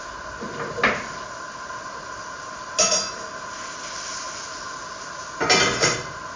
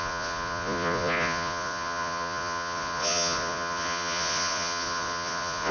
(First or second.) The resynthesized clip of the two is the second